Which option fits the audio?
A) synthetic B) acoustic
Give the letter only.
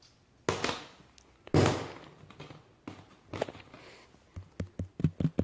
B